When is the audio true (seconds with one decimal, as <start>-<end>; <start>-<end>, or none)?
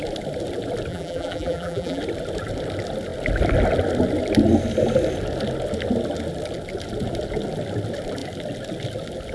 0.0-0.9; 2.0-9.3